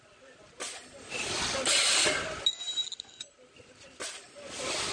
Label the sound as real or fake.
real